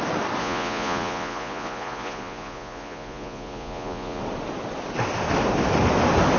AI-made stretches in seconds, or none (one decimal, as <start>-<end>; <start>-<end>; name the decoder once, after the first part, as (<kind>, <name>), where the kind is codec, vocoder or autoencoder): 0.4-4.2 (vocoder, Vocos)